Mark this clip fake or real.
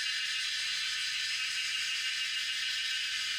real